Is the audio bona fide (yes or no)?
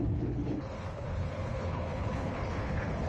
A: no